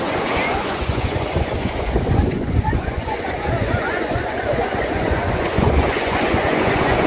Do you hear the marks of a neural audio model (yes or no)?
yes